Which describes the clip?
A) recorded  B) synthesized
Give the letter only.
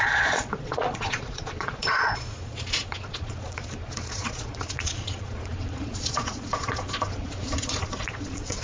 B